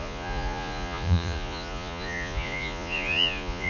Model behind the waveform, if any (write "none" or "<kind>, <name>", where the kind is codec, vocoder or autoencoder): vocoder, Vocos